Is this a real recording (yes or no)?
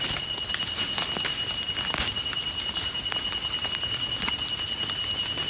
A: yes